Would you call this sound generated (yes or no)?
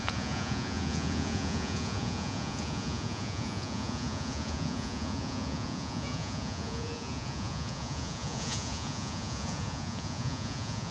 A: yes